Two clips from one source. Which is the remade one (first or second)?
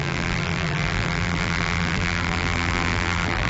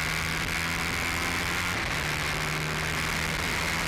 first